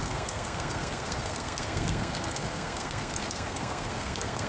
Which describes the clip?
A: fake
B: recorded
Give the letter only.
A